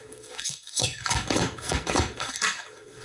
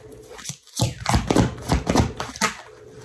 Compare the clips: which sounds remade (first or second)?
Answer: first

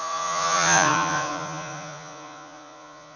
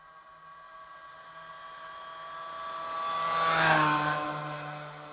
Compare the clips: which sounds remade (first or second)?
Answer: first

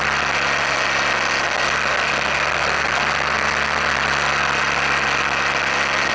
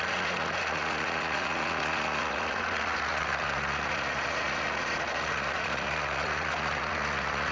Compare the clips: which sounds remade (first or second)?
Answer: second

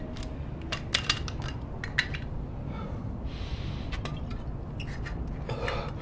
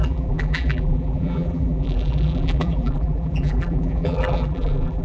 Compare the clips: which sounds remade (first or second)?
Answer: second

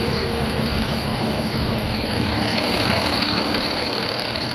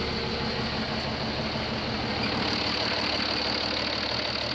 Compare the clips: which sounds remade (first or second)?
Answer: first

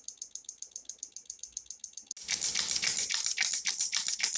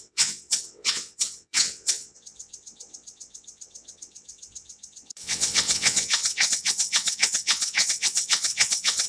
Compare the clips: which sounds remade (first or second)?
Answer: second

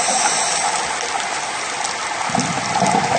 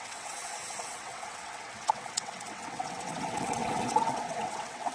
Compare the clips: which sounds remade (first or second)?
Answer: second